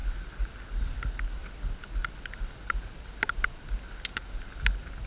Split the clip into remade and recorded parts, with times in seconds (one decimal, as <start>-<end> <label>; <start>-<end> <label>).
0.0-5.1 recorded